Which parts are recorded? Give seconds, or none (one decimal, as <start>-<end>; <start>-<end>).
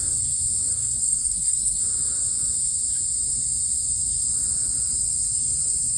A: 0.0-0.7; 1.8-6.0